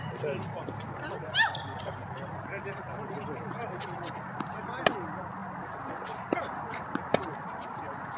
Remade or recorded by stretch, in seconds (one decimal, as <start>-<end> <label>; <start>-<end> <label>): 0.0-8.2 recorded